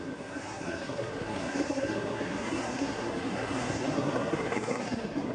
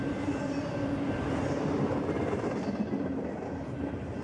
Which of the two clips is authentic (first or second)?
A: second